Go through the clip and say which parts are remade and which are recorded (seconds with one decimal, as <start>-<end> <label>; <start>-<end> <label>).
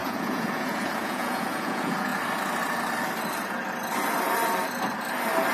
0.0-2.1 remade; 2.1-5.5 recorded